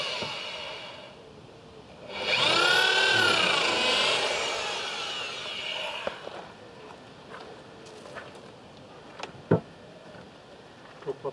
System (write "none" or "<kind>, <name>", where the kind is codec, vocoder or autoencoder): none